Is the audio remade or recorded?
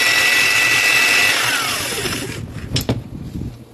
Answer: recorded